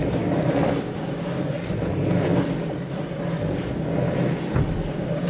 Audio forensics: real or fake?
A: real